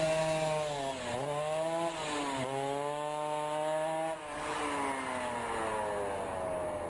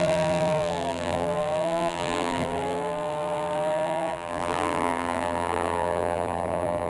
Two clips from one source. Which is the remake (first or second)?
second